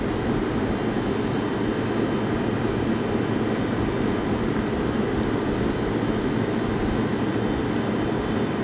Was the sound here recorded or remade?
recorded